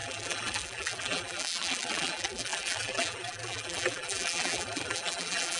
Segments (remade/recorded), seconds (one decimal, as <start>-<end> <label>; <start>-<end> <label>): 0.0-5.6 remade